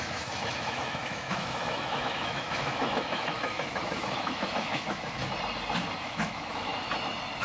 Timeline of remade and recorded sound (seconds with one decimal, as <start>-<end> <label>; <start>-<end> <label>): 0.0-5.2 remade; 5.2-6.0 recorded; 6.0-6.7 remade; 6.7-7.4 recorded

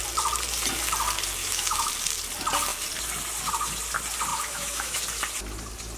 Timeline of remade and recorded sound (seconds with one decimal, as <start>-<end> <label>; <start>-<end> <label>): 0.0-1.4 recorded; 1.4-1.9 remade; 1.9-4.3 recorded; 4.3-5.0 remade; 5.0-6.0 recorded

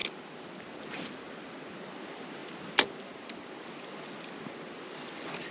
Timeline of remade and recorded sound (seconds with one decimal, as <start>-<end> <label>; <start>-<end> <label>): 0.0-5.5 recorded

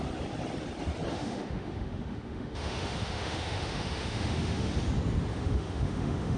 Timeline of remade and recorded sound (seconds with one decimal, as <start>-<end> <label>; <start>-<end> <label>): 0.0-1.1 recorded; 1.1-4.7 remade; 4.7-5.3 recorded; 5.3-6.4 remade